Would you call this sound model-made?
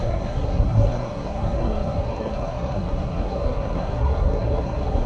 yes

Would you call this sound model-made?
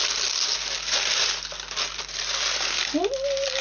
no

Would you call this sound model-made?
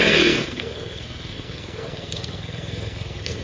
yes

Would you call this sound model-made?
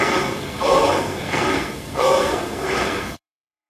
yes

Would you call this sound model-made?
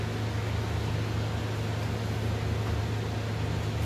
no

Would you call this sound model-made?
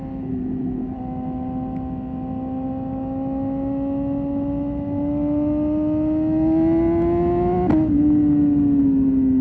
no